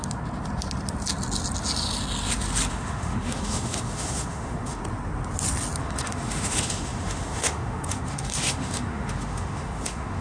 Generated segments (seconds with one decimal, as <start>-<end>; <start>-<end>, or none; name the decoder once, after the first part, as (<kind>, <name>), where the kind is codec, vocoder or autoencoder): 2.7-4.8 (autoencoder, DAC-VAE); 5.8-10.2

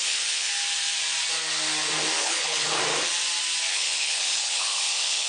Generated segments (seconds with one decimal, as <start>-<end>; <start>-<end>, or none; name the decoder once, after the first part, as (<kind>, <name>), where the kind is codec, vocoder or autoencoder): 0.0-0.5 (codec, HILCodec); 2.2-2.8; 3.7-5.3

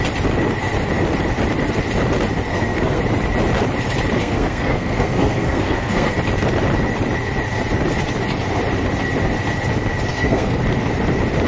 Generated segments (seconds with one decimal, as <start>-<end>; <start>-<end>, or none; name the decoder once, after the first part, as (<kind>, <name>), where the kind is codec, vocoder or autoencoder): 2.5-3.0 (codec, SNAC); 4.2-6.1; 10.1-10.6

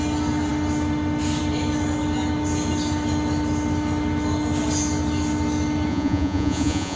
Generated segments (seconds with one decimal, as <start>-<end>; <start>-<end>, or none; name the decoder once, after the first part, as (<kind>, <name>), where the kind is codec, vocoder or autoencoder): 5.9-7.0 (vocoder, Vocos)

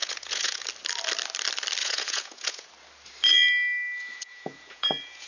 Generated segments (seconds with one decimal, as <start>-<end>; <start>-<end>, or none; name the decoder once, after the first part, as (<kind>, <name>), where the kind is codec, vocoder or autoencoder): 0.0-0.6 (vocoder, Vocos); 1.8-2.7; 4.1-5.3

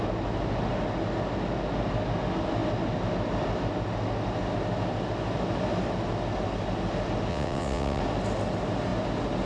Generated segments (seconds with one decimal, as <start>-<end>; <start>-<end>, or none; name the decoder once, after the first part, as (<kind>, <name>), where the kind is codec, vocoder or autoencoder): 7.3-8.0 (vocoder, WaveNeXt)